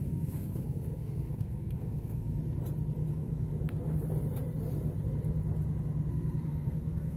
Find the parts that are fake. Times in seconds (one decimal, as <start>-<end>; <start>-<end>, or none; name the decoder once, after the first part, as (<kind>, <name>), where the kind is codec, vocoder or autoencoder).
0.0-2.4 (codec, SNAC); 3.1-3.5; 6.1-7.2